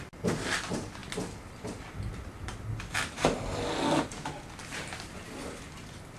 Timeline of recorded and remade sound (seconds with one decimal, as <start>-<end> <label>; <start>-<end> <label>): 0.0-6.2 recorded